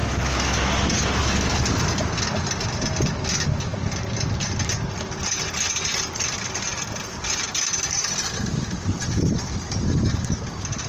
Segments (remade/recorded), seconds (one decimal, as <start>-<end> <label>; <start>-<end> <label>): 0.0-0.7 remade; 0.7-1.2 recorded; 1.2-1.7 remade; 1.7-10.9 recorded

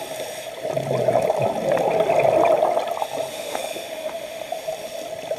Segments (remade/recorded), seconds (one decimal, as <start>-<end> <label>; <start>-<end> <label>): 0.0-3.3 recorded; 3.3-4.6 remade; 4.6-5.4 recorded

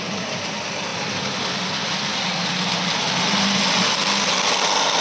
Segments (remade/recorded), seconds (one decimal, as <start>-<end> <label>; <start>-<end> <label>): 0.0-5.0 recorded

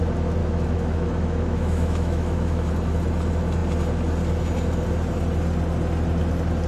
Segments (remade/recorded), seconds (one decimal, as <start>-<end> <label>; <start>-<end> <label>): 0.0-0.4 recorded; 0.4-2.7 remade; 2.7-6.7 recorded

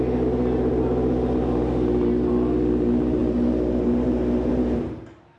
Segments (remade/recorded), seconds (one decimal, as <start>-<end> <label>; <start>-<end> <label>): 0.0-5.4 recorded

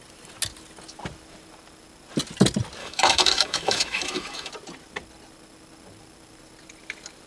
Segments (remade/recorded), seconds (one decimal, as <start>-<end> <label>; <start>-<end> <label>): 0.0-2.8 recorded; 2.8-4.5 remade; 4.5-7.3 recorded

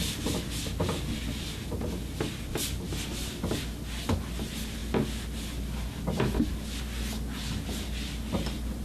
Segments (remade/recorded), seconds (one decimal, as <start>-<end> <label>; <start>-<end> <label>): 0.0-8.8 recorded

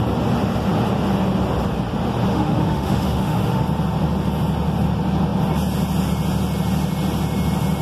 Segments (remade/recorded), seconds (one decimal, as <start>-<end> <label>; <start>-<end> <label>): 0.0-2.3 recorded; 2.3-3.6 remade; 3.6-7.8 recorded